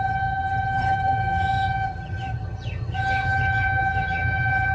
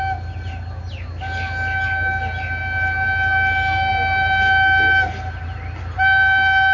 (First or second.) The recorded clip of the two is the second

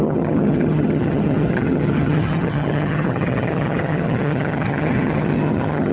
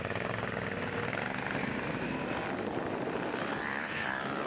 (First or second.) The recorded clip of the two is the second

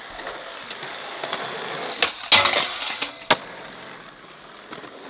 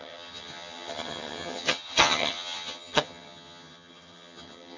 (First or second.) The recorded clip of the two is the first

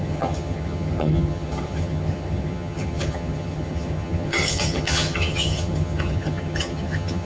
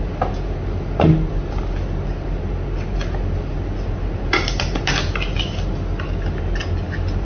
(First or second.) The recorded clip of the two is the second